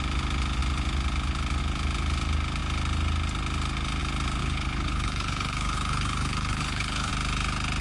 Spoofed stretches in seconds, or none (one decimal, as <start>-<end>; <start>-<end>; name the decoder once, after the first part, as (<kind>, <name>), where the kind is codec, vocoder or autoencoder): 4.4-7.1 (codec, HILCodec)